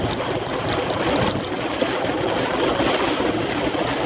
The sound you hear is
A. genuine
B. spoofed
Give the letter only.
A